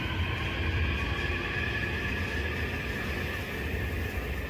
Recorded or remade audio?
recorded